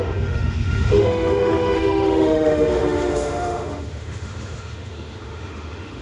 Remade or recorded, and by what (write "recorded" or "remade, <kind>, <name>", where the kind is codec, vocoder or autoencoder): remade, autoencoder, DAC-VAE